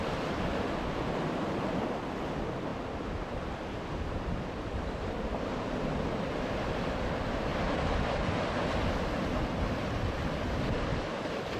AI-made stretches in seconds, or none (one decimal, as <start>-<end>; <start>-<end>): none